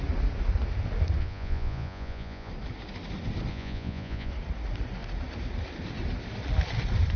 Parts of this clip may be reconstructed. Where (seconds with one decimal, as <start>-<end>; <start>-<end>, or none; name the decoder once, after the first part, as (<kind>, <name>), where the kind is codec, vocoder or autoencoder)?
1.2-2.5 (vocoder, Vocos); 3.5-4.3